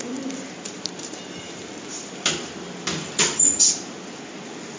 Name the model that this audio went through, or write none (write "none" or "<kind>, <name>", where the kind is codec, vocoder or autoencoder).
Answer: none